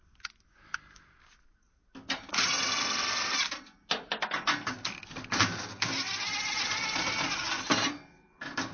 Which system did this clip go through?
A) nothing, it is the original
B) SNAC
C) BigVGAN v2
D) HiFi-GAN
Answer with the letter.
A